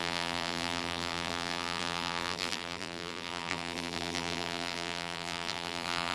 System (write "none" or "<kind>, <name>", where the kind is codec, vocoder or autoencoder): vocoder, BigVGAN v2